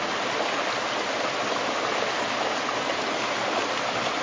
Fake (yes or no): no